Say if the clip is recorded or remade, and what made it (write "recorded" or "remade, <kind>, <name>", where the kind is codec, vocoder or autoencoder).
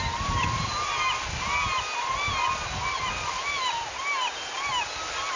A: recorded